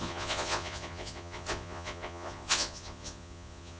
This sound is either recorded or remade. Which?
remade